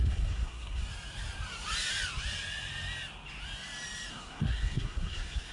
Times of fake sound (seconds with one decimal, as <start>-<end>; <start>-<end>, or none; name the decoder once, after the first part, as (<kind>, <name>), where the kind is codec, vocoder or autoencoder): 0.0-0.8 (codec, SNAC); 4.1-5.5

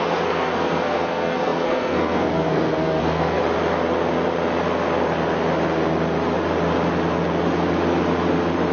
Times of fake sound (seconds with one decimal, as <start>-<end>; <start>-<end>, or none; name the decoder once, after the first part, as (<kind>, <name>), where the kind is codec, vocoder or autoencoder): 0.0-3.4 (codec, SNAC)

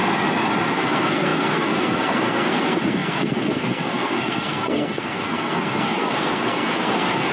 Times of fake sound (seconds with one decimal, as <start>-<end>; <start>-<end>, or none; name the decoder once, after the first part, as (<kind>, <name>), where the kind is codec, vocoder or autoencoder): 0.7-7.3 (codec, SNAC)

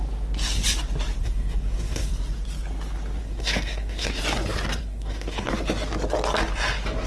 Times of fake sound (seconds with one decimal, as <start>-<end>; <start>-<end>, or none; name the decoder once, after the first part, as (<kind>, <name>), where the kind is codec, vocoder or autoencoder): 1.2-2.1 (codec, SNAC); 3.2-4.2; 4.8-5.5

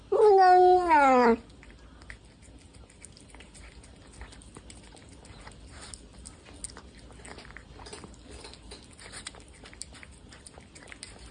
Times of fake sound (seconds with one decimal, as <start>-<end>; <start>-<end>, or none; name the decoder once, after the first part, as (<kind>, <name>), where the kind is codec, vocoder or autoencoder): none

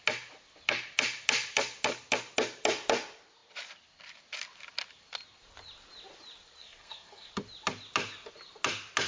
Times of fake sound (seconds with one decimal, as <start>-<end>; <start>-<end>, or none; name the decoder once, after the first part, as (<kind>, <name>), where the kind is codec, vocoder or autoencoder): 6.6-7.3 (codec, SNAC)

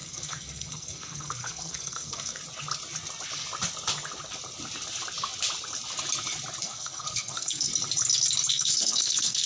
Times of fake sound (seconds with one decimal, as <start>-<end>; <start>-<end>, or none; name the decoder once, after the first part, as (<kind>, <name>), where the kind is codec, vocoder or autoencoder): 0.0-2.4 (codec, SNAC); 6.6-7.7; 8.5-9.5